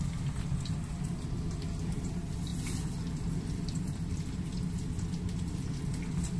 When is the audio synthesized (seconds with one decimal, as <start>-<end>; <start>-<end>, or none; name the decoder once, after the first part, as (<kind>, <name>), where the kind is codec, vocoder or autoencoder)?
none